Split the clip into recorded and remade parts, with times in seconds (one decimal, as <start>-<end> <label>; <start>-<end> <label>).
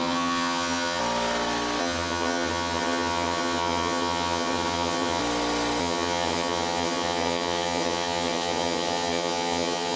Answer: 0.0-1.0 remade; 1.0-1.8 recorded; 1.8-5.2 remade; 5.2-5.8 recorded; 5.8-10.0 remade